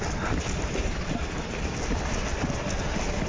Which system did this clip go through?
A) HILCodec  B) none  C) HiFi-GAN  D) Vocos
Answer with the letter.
B